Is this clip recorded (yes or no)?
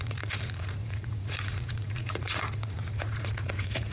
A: no